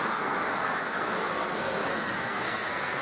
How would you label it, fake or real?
fake